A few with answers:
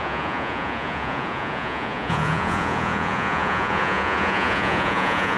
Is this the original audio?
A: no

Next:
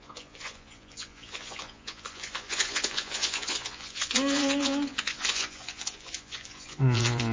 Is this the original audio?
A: no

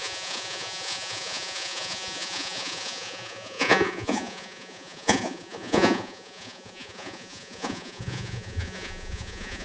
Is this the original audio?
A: no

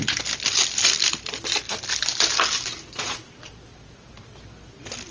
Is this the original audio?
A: yes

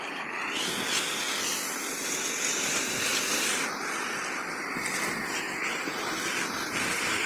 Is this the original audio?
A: yes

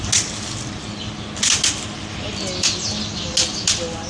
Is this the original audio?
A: yes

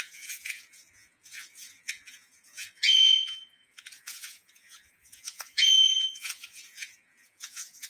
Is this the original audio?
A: no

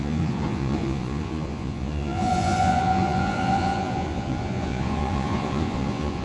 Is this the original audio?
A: no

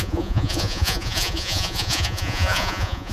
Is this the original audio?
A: no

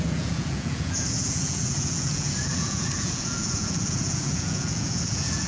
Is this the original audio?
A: no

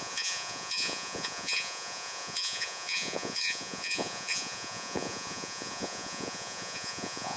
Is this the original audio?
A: no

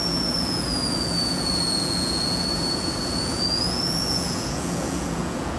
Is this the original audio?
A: no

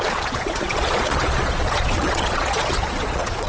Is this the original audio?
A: no